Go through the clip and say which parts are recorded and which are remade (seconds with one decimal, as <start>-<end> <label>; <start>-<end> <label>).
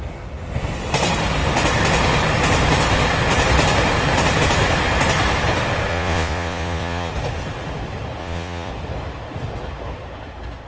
0.0-5.9 recorded; 5.9-7.1 remade; 7.1-8.2 recorded; 8.2-8.7 remade; 8.7-10.7 recorded